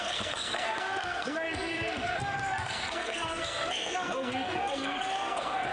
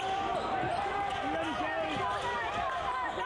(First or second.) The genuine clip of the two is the second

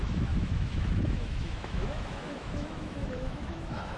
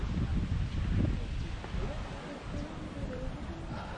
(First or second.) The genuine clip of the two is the second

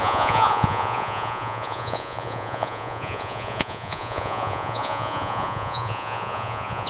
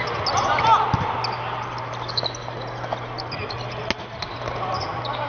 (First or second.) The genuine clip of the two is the second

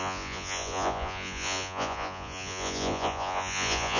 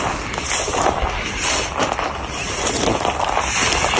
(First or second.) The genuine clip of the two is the second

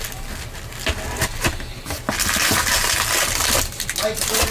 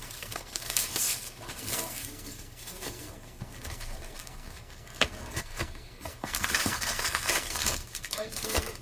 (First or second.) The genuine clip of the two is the first